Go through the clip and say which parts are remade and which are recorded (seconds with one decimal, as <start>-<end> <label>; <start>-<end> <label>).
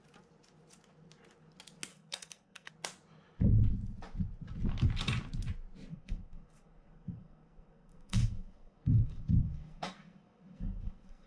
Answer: 0.0-1.9 recorded; 1.9-2.7 remade; 2.7-5.9 recorded; 5.9-11.3 remade